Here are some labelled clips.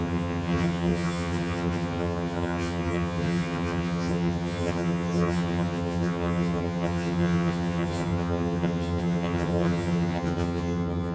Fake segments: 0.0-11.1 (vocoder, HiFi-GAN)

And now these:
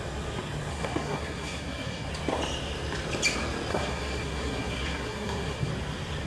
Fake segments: 0.7-2.1 (codec, SNAC); 3.7-5.7

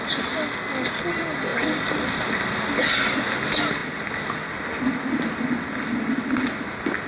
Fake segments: none

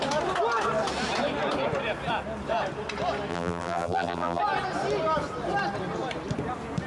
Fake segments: 3.3-4.4 (vocoder, BigVGAN v2)

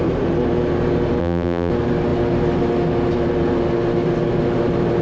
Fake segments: 1.2-1.7 (vocoder, BigVGAN v2)

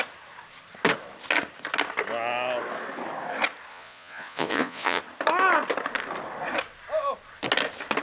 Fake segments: 3.7-5.0 (vocoder, Vocos)

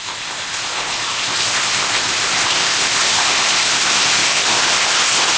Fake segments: 0.0-5.4 (codec, ZipCodec)